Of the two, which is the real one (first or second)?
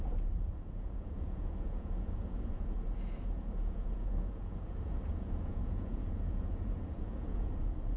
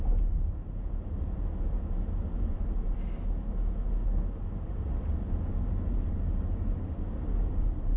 second